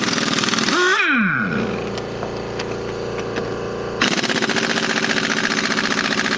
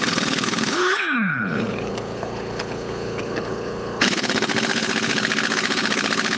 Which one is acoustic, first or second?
first